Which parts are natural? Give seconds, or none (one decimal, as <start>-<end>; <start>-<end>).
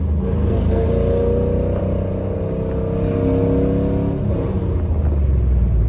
0.0-0.4; 0.9-5.9